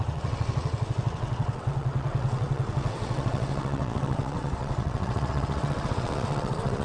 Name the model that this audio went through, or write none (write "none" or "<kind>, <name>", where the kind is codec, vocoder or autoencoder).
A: vocoder, WaveNeXt